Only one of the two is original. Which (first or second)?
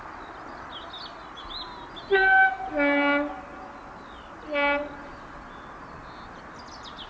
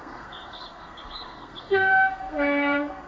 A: first